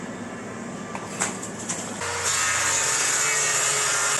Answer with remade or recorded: recorded